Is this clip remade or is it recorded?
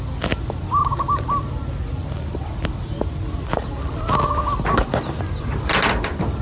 recorded